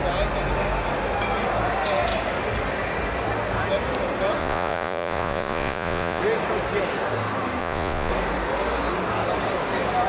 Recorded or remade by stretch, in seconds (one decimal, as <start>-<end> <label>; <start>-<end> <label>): 0.0-4.4 recorded; 4.4-6.2 remade; 6.2-7.6 recorded; 7.6-8.1 remade; 8.1-10.1 recorded